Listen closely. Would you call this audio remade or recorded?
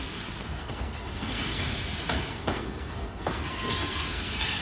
remade